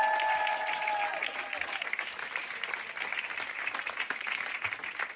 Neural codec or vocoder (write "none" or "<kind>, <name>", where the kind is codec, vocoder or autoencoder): none